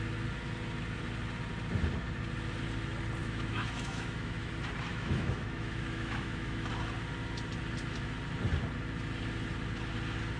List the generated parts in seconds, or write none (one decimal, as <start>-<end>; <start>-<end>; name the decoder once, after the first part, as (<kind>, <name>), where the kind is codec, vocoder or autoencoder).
3.2-4.5 (autoencoder, DAC-VAE); 4.9-6.7